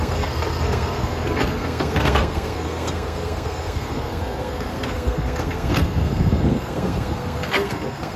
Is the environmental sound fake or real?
fake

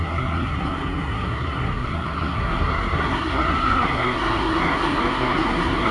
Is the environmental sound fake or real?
fake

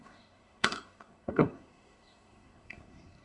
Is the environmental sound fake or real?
fake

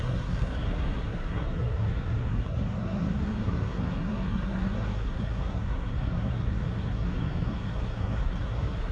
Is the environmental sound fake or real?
fake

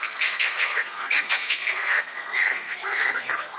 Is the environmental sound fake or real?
fake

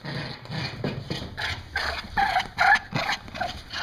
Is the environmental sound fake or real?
real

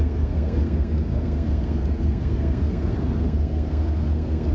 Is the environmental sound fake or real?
fake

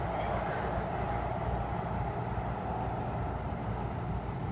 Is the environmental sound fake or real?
real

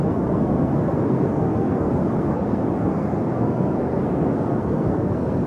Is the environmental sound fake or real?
fake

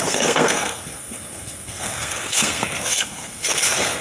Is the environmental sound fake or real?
fake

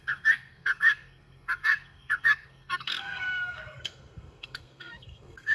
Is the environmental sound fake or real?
fake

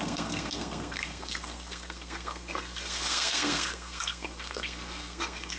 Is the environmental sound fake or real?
fake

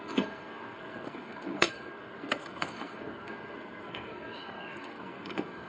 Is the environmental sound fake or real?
fake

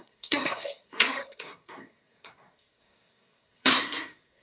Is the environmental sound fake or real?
fake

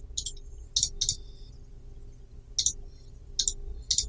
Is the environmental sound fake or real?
real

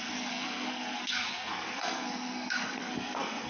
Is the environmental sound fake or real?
fake